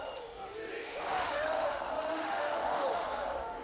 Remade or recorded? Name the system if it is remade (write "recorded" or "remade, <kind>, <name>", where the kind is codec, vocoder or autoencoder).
remade, autoencoder, DAC-VAE